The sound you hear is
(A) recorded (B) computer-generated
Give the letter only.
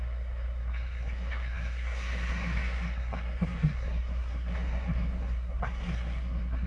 B